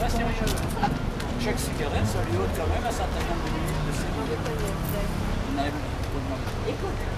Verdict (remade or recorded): recorded